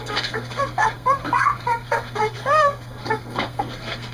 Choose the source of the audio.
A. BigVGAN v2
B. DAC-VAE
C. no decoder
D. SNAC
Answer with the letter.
D